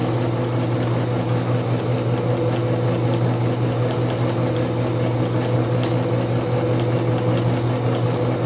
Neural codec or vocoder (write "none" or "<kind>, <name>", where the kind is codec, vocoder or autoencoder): none